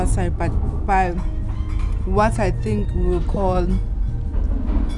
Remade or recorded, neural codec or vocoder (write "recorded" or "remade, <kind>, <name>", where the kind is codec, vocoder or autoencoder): recorded